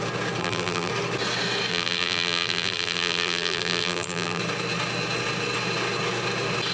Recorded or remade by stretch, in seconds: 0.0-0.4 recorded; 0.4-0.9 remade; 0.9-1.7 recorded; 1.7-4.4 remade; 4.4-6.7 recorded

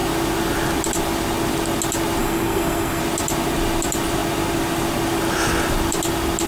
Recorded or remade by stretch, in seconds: 0.0-2.2 recorded; 2.2-3.0 remade; 3.0-6.5 recorded

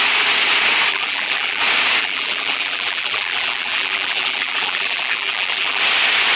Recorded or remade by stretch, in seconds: 0.0-0.9 recorded; 0.9-1.6 remade; 1.6-2.0 recorded; 2.0-5.8 remade; 5.8-6.4 recorded

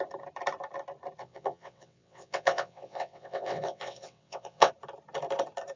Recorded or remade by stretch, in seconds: 0.0-1.2 recorded; 1.2-4.7 remade; 4.7-5.8 recorded

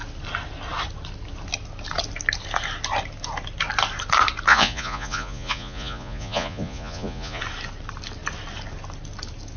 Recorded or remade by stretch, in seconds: 0.0-4.5 recorded; 4.5-7.4 remade; 7.4-9.6 recorded

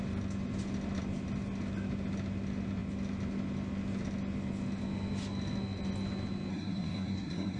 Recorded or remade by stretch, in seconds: 0.0-6.5 recorded; 6.5-7.6 remade